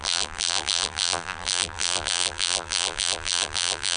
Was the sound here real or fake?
fake